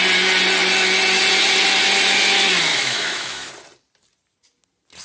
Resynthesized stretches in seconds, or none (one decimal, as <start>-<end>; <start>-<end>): 2.7-3.5